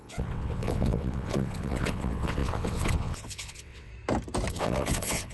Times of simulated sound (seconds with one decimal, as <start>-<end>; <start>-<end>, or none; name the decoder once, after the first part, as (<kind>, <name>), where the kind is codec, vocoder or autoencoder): 0.0-3.9 (vocoder, WaveNeXt); 4.5-5.3